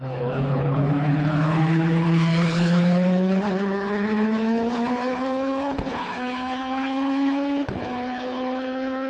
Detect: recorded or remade remade